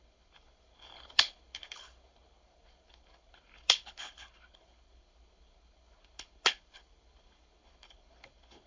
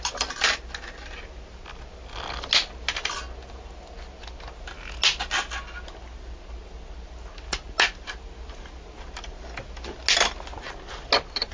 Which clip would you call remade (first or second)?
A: first